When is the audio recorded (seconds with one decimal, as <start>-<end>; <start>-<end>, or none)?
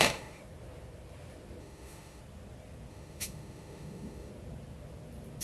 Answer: 0.4-1.6; 2.2-2.9; 4.3-5.4